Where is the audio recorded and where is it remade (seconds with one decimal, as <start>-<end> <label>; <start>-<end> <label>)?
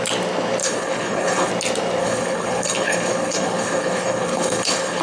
0.0-0.6 recorded; 0.6-1.5 remade; 1.5-2.0 recorded; 2.0-5.0 remade